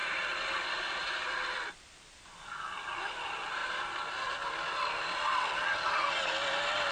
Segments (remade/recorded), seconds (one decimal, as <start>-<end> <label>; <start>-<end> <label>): 0.0-6.9 recorded